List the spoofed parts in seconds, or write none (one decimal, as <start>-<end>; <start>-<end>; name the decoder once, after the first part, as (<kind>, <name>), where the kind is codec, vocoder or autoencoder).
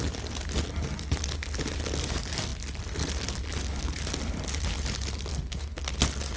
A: 5.3-5.9 (codec, SNAC)